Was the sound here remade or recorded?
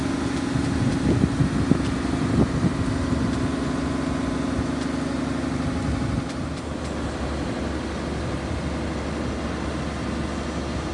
recorded